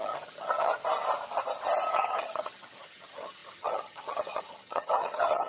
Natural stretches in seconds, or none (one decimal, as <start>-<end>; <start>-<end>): 0.7-1.9